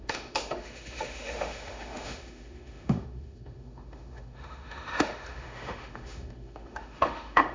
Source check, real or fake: fake